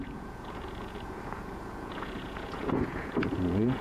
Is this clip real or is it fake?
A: fake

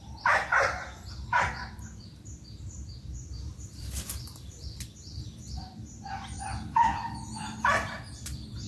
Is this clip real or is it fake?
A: fake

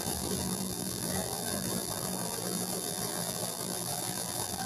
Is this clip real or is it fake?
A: fake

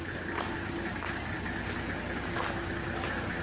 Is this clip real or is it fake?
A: real